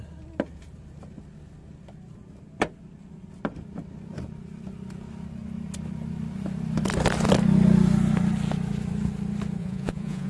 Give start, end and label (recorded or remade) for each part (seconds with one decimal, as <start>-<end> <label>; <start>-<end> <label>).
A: 0.0-9.6 recorded; 9.6-10.3 remade